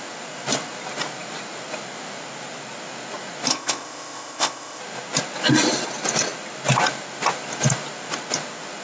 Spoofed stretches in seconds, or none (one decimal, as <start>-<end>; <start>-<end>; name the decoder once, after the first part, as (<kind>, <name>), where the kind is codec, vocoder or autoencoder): 3.5-4.8 (codec, ZipCodec)